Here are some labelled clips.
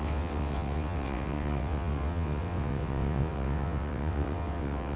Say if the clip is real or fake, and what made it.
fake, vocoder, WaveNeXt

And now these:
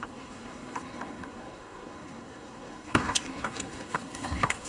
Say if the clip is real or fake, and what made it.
fake, codec, SNAC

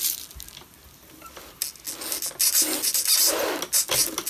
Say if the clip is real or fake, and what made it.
real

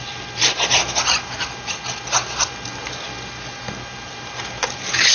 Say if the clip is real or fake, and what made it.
real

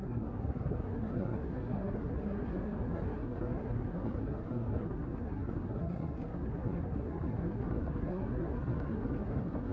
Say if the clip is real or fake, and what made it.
fake, codec, SNAC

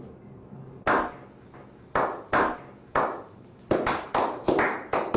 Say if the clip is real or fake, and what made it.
real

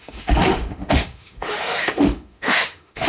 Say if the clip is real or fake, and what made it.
fake, autoencoder, DAC-VAE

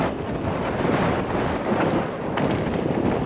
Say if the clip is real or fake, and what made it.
real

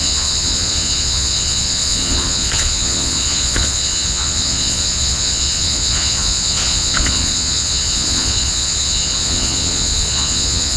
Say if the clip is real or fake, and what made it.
fake, vocoder, Vocos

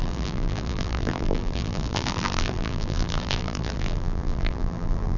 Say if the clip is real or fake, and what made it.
fake, vocoder, BigVGAN v2